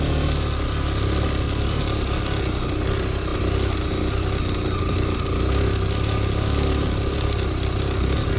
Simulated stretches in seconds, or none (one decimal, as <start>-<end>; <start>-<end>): none